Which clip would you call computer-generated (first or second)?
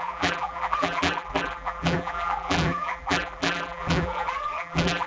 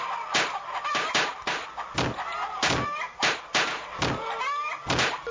first